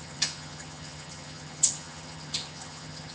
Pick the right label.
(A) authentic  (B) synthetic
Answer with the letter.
B